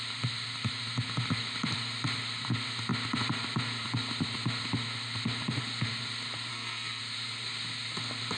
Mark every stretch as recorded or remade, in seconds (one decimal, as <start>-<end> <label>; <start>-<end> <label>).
0.0-6.5 recorded; 6.5-7.0 remade; 7.0-8.4 recorded